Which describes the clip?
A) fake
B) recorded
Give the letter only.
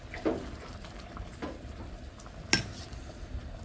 B